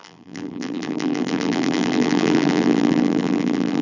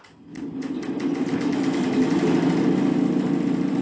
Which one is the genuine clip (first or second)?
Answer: second